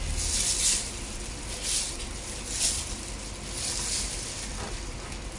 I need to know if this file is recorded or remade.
recorded